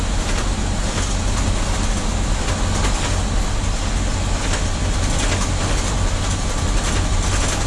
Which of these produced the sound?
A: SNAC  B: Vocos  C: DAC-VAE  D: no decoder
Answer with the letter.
D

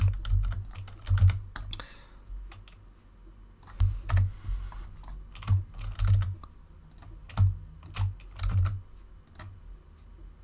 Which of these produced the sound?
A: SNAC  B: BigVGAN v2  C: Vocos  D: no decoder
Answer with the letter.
D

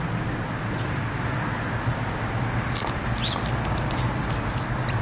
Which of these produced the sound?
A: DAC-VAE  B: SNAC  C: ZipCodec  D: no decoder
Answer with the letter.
D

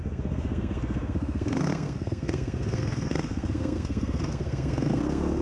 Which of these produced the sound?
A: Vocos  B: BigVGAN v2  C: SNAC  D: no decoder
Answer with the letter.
C